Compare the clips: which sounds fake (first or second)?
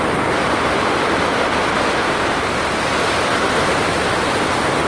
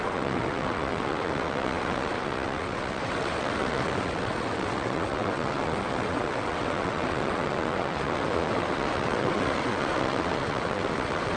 second